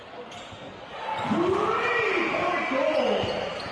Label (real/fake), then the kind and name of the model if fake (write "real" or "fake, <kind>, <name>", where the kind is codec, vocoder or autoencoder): fake, vocoder, BigVGAN v2